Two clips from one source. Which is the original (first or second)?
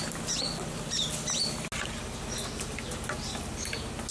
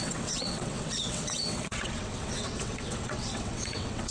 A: first